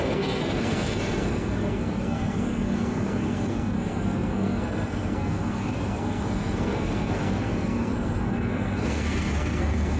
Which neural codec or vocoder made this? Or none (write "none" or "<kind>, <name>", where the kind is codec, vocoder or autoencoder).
codec, SNAC